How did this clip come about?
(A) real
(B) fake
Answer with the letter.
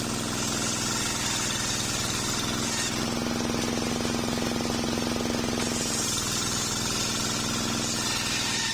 A